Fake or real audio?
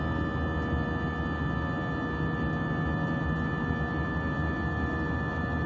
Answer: real